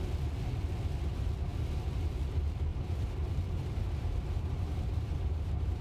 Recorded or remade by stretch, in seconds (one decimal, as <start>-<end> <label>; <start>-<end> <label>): 0.0-2.7 recorded; 2.7-5.8 remade